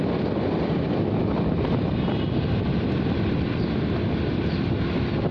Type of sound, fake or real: real